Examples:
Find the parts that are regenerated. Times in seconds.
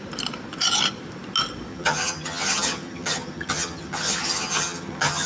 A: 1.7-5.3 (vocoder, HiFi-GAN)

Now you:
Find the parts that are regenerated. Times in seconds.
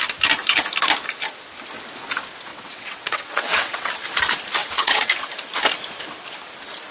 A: 2.5-3.9 (vocoder, WaveNeXt); 4.6-5.1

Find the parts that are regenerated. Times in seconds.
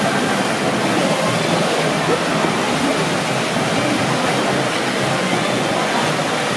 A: 5.2-6.1 (vocoder, Vocos)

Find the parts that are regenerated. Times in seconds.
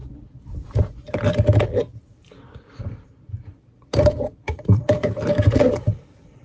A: 2.8-6.4 (vocoder, BigVGAN v2)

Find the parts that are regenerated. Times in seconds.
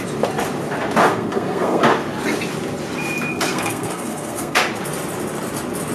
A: 1.1-1.8 (codec, SNAC); 3.3-4.6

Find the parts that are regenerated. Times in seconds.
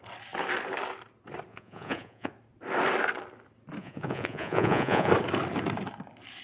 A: 1.5-2.3 (vocoder, Vocos); 3.8-5.1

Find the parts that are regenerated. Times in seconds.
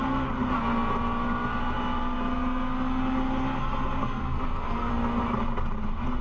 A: 4.0-4.9 (codec, SNAC)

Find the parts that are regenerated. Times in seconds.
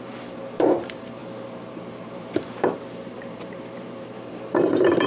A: 0.0-5.1 (vocoder, BigVGAN v2)